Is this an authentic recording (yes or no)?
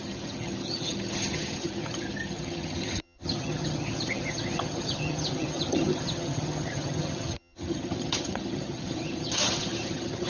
no